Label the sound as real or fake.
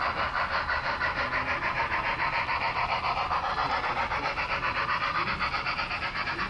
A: real